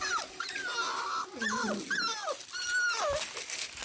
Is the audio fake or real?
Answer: real